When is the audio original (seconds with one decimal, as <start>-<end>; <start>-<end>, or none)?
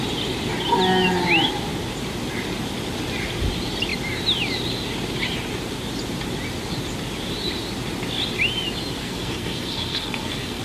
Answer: 0.0-9.0